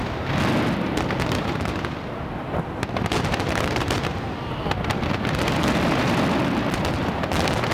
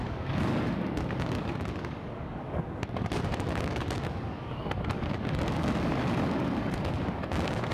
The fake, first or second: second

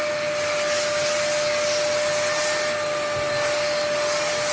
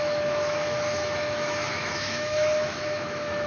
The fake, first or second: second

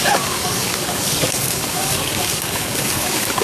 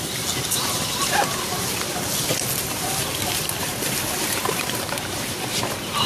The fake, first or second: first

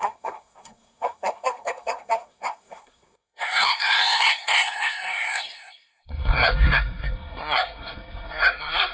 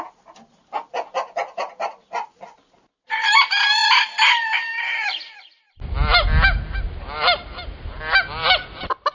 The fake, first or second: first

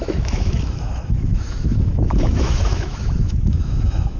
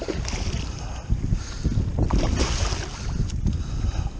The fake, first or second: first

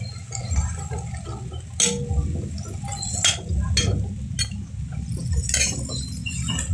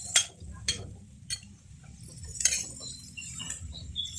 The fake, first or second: second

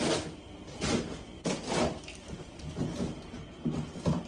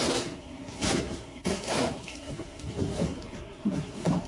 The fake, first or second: second